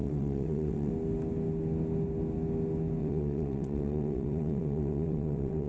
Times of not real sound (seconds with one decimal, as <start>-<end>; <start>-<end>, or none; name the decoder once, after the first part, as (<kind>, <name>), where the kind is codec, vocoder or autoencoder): 0.0-0.9 (vocoder, WaveNeXt); 3.0-5.7